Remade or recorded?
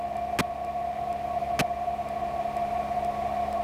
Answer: recorded